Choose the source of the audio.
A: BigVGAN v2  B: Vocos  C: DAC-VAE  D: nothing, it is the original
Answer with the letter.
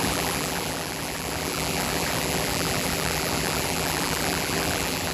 A